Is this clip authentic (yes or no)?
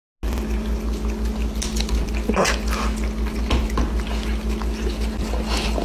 yes